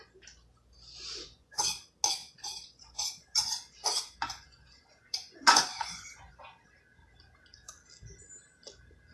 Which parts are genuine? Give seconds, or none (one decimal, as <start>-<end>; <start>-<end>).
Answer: 0.0-1.2; 1.8-2.2; 6.3-9.1